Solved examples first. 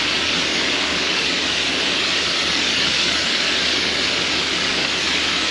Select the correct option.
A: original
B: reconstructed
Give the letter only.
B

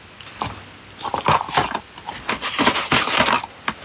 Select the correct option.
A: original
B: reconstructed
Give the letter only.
A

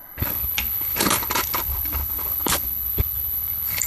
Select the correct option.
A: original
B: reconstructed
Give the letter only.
B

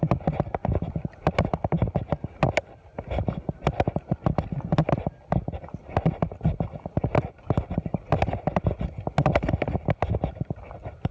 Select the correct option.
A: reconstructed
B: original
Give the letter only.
B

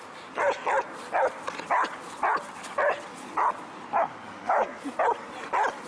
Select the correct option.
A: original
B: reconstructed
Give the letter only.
A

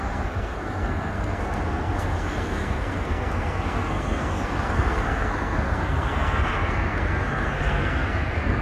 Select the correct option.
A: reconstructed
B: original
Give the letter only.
A